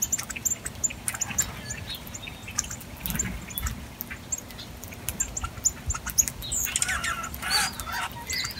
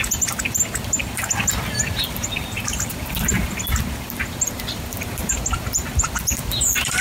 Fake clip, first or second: second